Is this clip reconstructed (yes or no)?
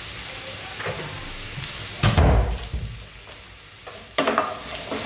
no